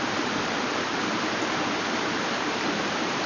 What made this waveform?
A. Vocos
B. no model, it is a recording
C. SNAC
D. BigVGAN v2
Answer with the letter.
D